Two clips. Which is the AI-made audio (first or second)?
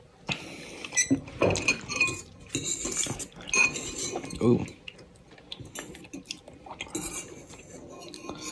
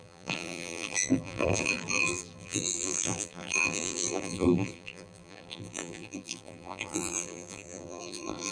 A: second